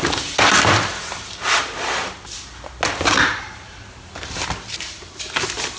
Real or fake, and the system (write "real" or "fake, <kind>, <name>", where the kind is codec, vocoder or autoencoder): real